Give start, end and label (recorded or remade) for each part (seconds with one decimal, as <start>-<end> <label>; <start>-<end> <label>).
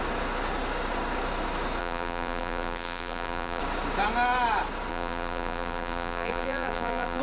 0.0-1.8 recorded; 1.8-3.6 remade; 3.6-4.9 recorded; 4.9-7.2 remade